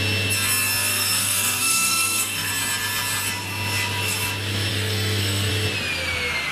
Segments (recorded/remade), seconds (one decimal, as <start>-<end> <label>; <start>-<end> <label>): 0.0-0.9 recorded; 0.9-2.5 remade; 2.5-4.7 recorded; 4.7-5.5 remade; 5.5-6.5 recorded